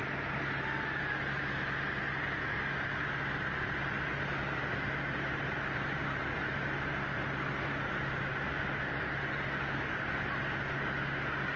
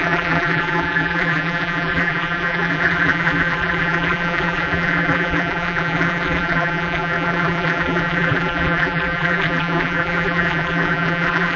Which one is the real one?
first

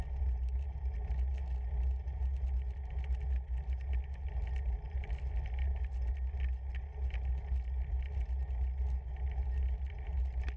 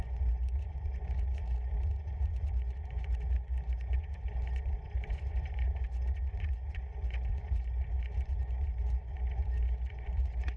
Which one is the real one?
first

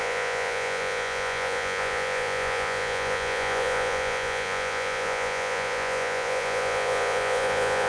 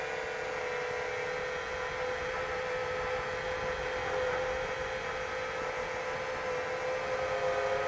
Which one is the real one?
second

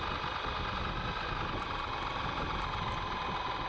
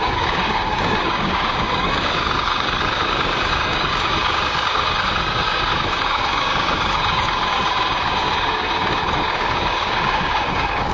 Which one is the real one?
first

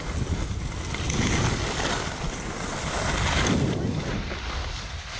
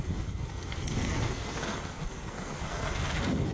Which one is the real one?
first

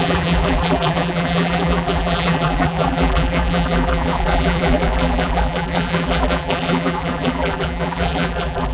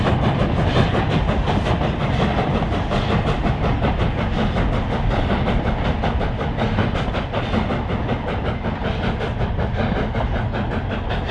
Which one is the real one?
second